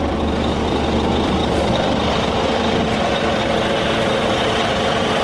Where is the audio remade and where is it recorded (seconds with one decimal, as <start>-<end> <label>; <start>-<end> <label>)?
0.0-3.4 remade; 3.4-4.4 recorded; 4.4-5.2 remade